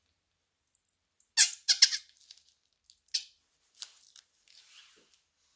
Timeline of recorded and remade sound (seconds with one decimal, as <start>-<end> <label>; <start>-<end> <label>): 0.0-5.6 recorded